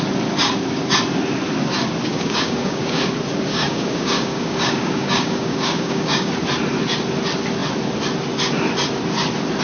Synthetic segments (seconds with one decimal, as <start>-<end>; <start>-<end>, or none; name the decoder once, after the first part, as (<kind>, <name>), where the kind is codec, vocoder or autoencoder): 2.1-3.1 (codec, DAC); 3.5-6.3